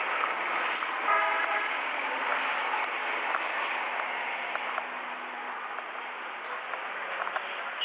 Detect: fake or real real